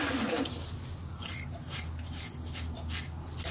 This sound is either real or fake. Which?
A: real